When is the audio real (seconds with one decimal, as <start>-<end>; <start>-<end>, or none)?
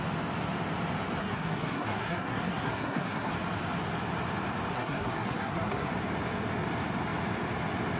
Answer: 0.0-1.2; 3.3-4.7; 5.9-8.0